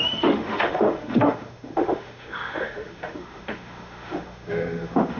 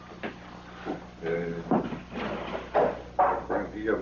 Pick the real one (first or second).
second